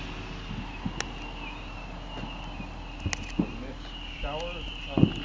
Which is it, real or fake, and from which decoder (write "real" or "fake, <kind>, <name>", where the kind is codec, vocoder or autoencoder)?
real